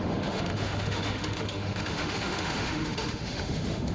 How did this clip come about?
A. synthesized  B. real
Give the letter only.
A